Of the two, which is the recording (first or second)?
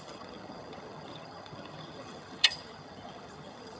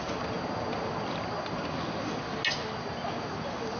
second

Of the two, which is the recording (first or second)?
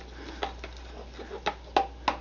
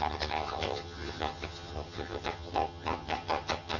first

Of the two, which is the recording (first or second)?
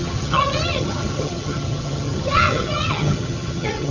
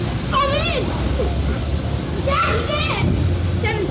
second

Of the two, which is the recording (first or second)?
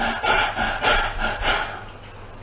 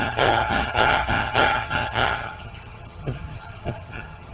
first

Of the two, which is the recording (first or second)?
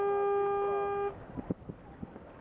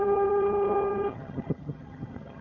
first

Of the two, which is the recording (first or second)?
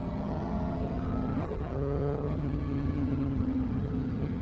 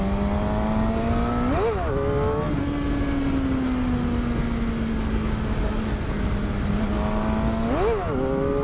second